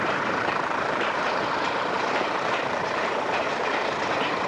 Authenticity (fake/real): fake